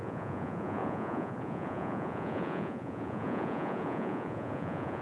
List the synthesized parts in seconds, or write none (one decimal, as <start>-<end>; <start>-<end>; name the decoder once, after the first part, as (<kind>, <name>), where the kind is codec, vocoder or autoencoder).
0.0-5.0 (vocoder, Vocos)